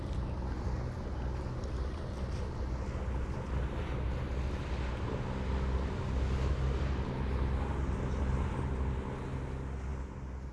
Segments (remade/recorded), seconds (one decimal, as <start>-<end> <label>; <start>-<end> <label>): 0.0-10.5 recorded